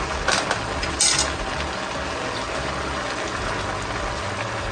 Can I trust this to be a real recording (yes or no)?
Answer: yes